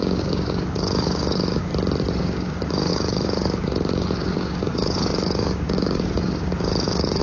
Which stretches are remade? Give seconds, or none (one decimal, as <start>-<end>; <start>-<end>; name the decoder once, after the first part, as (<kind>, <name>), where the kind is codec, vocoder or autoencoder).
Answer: 0.0-1.7 (codec, DAC); 2.2-7.2